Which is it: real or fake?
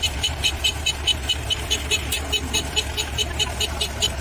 real